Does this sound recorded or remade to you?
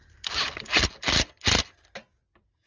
recorded